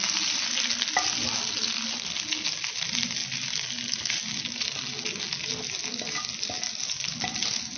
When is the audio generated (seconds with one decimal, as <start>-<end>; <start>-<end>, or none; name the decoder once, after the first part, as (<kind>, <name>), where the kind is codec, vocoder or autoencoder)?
none